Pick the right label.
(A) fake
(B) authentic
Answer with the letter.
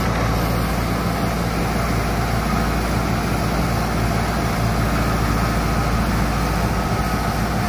B